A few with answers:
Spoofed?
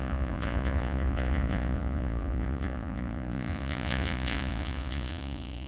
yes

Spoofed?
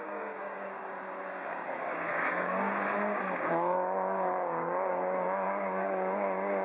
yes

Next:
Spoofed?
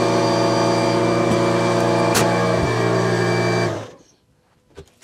no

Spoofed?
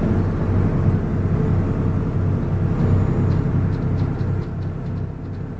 no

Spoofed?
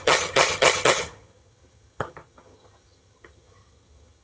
yes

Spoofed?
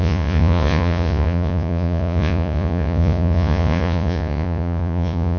yes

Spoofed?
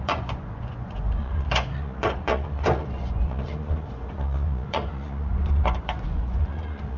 yes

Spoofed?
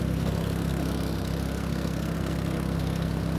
yes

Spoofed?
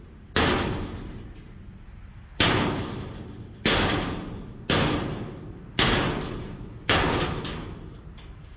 no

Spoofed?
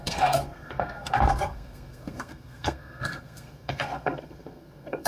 yes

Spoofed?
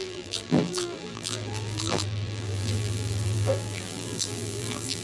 yes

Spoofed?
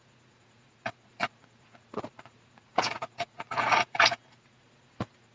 yes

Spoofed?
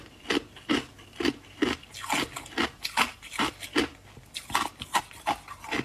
no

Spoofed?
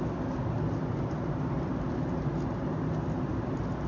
no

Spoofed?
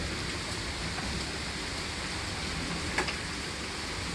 no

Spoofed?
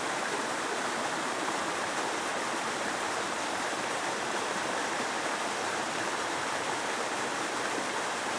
no